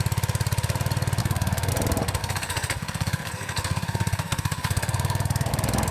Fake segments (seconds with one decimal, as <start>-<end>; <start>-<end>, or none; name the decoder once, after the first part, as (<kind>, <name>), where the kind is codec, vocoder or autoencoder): 1.2-1.7 (codec, SNAC); 2.2-5.5